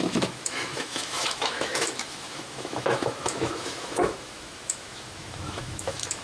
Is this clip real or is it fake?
fake